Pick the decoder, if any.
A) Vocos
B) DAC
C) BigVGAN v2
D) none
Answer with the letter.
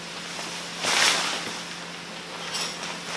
D